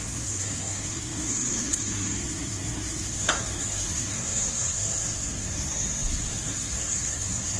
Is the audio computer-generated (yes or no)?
yes